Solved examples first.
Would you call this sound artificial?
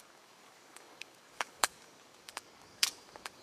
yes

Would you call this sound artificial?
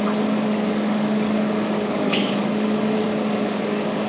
yes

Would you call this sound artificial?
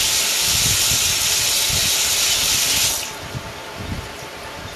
no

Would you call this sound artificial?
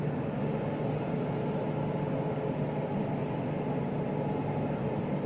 no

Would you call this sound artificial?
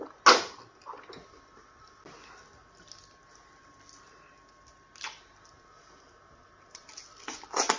no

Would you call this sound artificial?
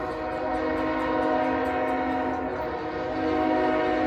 no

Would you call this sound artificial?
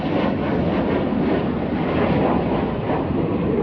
no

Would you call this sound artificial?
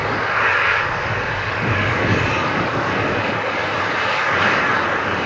yes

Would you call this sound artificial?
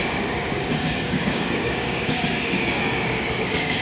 yes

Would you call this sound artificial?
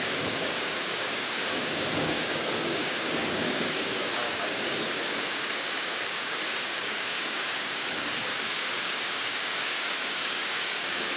yes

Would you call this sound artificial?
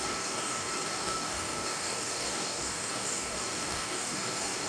yes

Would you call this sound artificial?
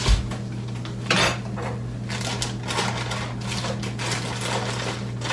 no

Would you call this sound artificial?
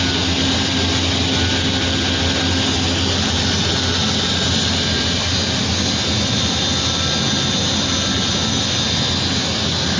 no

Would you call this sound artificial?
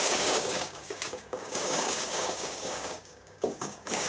yes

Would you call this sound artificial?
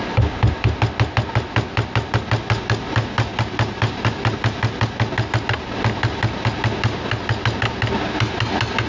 no